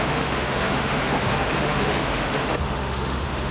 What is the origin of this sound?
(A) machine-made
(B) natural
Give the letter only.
A